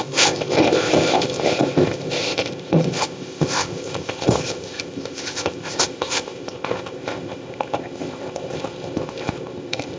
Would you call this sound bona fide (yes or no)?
no